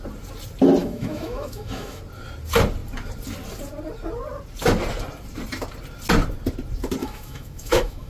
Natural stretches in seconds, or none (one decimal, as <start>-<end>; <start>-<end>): 0.0-0.8; 2.0-7.0